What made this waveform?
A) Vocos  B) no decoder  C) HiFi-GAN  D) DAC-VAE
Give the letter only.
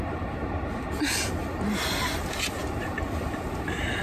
B